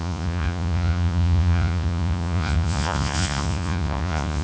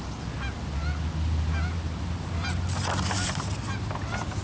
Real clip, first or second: second